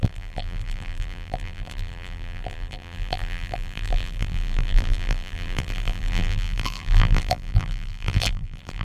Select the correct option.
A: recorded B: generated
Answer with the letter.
B